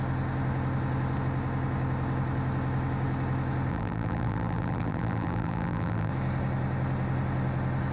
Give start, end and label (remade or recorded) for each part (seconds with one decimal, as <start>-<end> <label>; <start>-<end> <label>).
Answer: 0.0-3.7 recorded; 3.7-6.1 remade; 6.1-7.9 recorded